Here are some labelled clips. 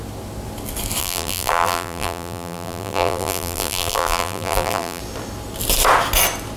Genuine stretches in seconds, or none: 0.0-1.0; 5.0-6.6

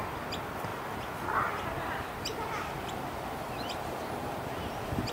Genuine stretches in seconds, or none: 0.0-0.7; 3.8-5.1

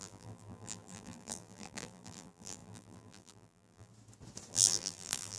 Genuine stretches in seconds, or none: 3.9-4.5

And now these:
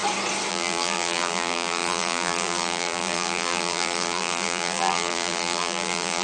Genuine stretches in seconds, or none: 0.0-0.5

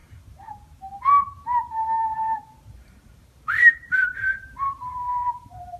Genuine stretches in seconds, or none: 0.8-2.0

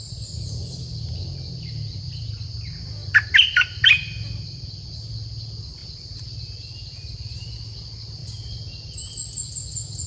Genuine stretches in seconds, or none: 0.0-10.1